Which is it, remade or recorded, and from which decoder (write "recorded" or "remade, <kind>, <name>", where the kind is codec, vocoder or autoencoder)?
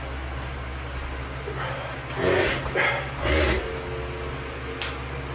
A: recorded